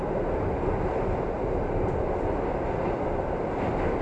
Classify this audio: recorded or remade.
recorded